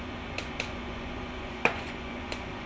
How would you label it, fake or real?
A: fake